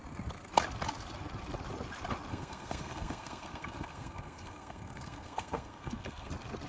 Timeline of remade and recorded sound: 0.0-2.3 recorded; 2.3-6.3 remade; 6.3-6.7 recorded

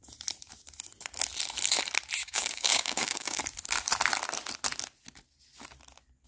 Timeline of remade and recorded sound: 0.0-2.2 recorded; 2.2-3.4 remade; 3.4-6.3 recorded

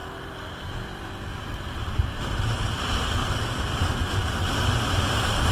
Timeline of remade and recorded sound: 0.0-2.2 remade; 2.2-3.2 recorded; 3.2-3.9 remade; 3.9-5.5 recorded

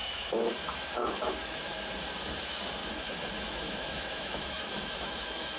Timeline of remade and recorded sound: 0.0-1.7 remade; 1.7-2.4 recorded; 2.4-2.8 remade; 2.8-3.3 recorded; 3.3-5.6 remade

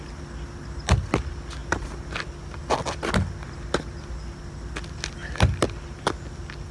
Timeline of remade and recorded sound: 0.0-6.7 recorded

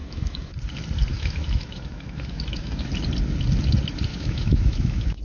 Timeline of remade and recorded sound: 0.0-0.5 remade; 0.5-1.1 recorded; 1.1-2.9 remade; 2.9-4.1 recorded; 4.1-5.2 remade